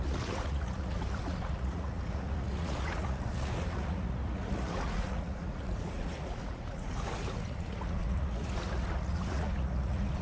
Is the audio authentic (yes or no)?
no